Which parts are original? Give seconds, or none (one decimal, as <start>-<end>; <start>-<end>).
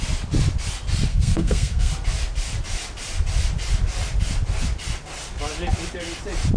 0.0-1.1; 1.9-6.6